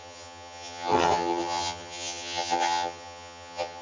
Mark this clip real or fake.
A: fake